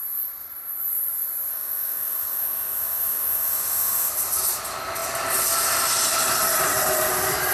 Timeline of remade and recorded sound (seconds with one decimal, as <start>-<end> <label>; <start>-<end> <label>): 0.0-1.5 recorded; 1.5-4.1 remade; 4.1-7.5 recorded